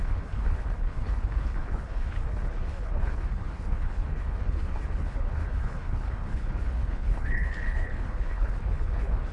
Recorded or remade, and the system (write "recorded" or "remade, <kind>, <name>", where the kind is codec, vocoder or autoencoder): remade, codec, HILCodec